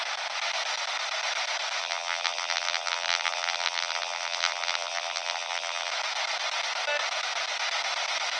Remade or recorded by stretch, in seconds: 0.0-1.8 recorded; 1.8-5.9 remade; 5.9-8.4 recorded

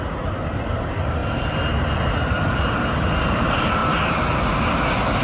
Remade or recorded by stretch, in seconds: 0.0-1.2 remade; 1.2-2.3 recorded; 2.3-3.8 remade; 3.8-5.2 recorded

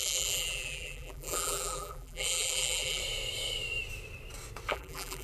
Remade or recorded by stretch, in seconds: 0.0-3.0 remade; 3.0-4.7 recorded; 4.7-5.2 remade

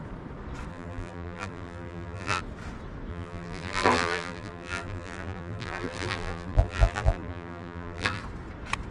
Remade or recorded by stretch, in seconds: 0.0-0.7 recorded; 0.7-2.4 remade; 2.4-3.1 recorded; 3.1-8.2 remade; 8.2-8.9 recorded

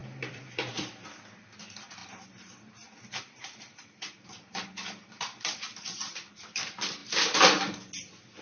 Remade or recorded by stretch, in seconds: 0.0-7.0 remade; 7.0-8.4 recorded